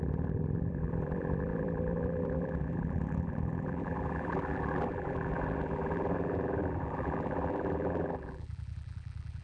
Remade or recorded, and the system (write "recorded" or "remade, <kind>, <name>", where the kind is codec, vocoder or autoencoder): remade, vocoder, BigVGAN v2